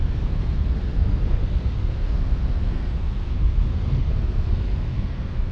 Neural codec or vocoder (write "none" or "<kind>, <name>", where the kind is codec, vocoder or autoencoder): codec, SNAC